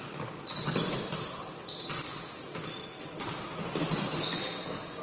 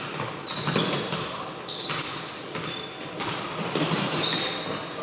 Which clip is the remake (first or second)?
first